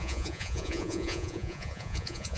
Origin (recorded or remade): remade